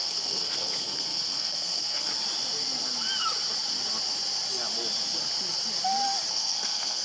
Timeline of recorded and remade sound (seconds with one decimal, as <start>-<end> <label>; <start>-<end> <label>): 0.0-2.1 remade; 2.1-6.3 recorded; 6.3-7.0 remade